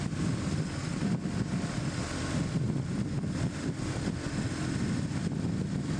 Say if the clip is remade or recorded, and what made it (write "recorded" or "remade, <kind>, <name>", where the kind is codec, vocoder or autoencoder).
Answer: recorded